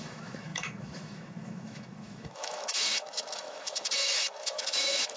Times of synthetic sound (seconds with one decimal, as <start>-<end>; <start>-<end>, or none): 0.0-5.2